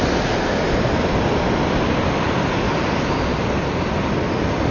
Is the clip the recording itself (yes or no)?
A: yes